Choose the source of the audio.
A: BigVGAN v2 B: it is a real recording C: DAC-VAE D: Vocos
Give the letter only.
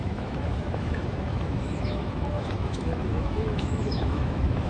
C